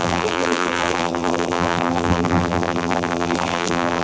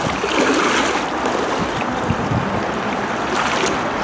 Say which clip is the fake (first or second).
first